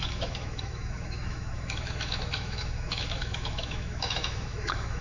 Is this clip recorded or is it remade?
remade